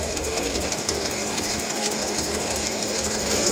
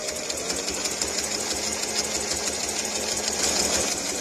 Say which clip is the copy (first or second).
first